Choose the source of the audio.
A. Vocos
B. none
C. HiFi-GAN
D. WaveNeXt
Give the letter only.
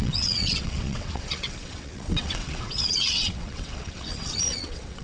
D